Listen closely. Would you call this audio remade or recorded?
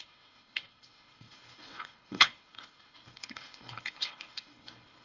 remade